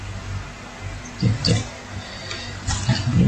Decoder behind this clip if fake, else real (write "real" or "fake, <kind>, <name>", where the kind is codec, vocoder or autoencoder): real